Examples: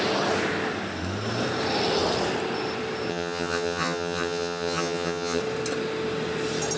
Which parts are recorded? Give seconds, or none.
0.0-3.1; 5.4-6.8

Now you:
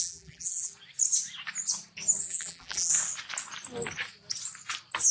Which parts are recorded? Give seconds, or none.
0.7-2.2; 2.9-5.1

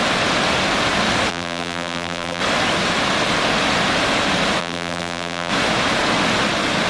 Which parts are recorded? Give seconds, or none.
0.0-1.3; 2.4-4.6; 5.5-6.9

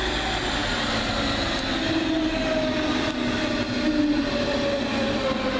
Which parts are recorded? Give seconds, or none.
0.0-5.6

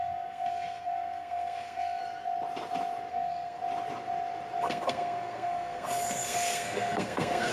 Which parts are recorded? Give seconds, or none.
2.0-3.1; 3.6-4.6

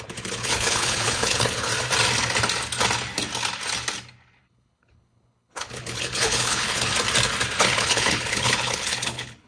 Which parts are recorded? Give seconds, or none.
1.7-4.4; 6.9-7.6

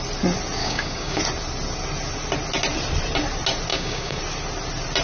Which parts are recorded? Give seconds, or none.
0.0-0.6; 1.2-3.7; 4.2-5.0

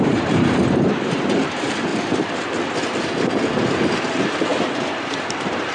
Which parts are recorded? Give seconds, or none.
1.9-5.3